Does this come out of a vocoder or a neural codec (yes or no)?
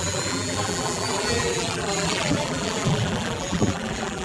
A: yes